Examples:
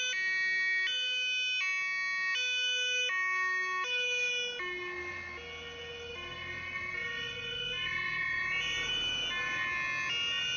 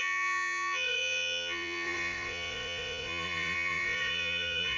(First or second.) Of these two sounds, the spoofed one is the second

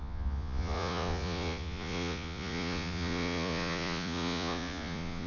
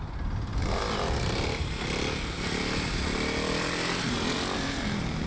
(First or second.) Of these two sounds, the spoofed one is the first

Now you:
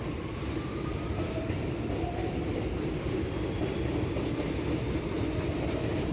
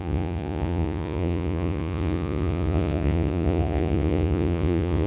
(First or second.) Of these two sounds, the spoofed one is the second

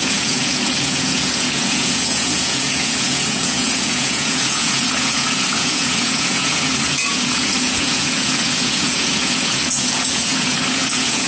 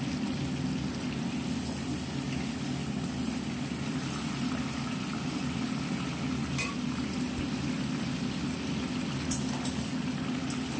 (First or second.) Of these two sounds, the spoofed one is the first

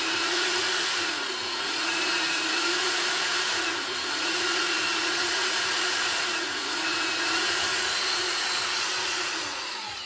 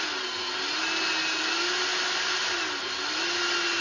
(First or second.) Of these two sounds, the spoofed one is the first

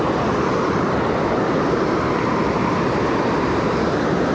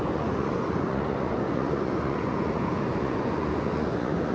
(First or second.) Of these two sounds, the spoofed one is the second